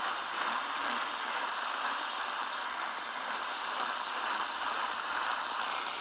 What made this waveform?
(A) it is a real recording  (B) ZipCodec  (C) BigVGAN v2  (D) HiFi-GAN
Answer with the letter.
C